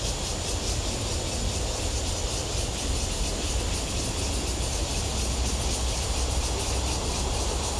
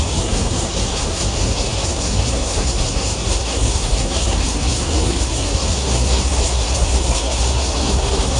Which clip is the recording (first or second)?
first